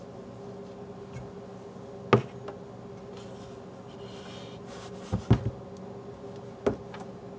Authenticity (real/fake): real